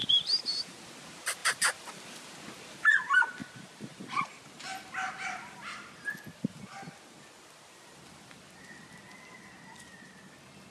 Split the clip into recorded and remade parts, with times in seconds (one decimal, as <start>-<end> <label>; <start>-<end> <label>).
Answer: 0.0-0.8 remade; 0.8-1.4 recorded; 1.4-1.9 remade; 1.9-3.4 recorded; 3.4-4.2 remade; 4.2-10.7 recorded